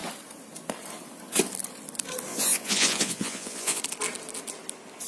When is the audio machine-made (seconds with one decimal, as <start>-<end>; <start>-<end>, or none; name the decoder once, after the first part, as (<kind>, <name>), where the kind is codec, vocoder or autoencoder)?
2.3-3.8 (vocoder, Vocos)